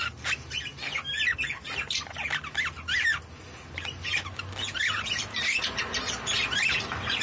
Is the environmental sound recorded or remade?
recorded